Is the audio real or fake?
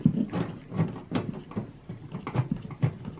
real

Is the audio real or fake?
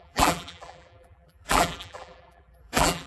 fake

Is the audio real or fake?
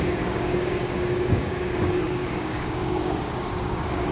fake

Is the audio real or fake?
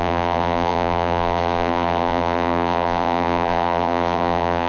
fake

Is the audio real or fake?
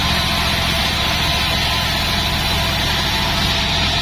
real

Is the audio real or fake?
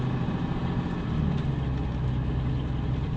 real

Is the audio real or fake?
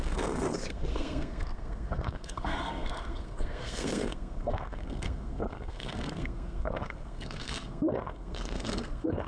fake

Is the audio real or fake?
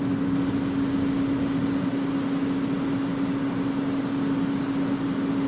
real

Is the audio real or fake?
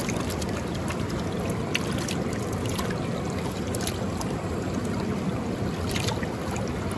real